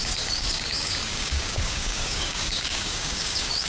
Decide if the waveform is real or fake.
fake